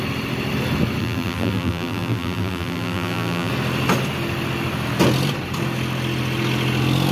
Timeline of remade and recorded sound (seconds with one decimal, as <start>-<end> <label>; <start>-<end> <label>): 0.0-1.0 recorded; 1.0-3.5 remade; 3.5-7.1 recorded